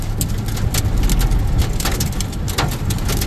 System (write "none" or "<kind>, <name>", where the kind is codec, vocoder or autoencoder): none